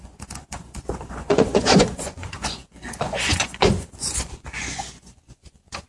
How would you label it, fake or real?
fake